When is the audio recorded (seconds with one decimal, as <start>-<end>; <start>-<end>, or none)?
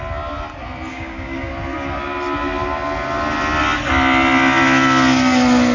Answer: 0.0-0.9; 1.5-5.7